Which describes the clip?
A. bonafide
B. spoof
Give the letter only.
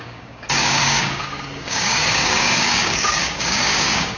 B